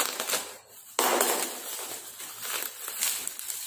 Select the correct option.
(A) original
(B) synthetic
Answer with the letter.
A